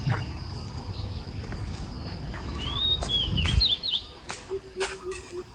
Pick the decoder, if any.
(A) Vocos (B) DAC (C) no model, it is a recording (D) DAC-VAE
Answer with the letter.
B